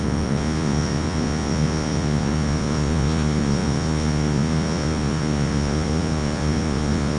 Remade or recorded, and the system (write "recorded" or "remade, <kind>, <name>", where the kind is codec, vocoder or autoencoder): remade, vocoder, Vocos